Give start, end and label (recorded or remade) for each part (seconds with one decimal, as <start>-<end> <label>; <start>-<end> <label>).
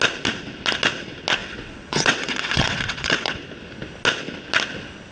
0.0-1.4 recorded; 1.4-3.4 remade; 3.4-5.1 recorded